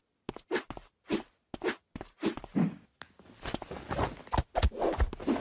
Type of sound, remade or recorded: recorded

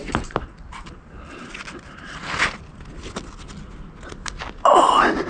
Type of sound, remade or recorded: recorded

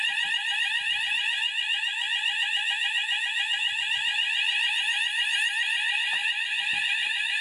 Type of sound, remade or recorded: recorded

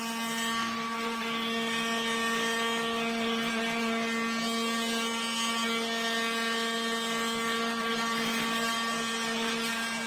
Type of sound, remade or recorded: recorded